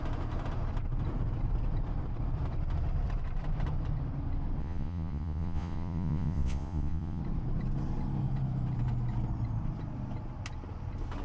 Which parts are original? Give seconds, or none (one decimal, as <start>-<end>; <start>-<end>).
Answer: 0.0-4.6; 7.2-11.2